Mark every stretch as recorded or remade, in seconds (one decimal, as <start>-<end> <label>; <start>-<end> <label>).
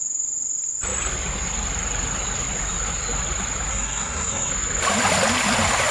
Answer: 0.0-3.7 recorded; 3.7-4.5 remade; 4.5-5.9 recorded